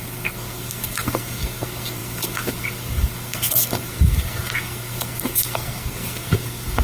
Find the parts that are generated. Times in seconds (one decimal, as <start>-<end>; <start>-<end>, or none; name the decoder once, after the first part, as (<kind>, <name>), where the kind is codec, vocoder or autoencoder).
0.0-6.8 (codec, SNAC)